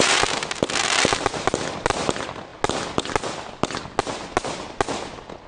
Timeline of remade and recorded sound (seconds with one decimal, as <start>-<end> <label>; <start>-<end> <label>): 0.0-5.5 recorded